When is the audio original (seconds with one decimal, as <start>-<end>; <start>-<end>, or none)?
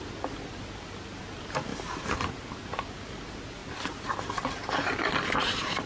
0.0-5.9